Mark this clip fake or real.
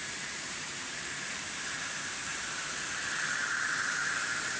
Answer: fake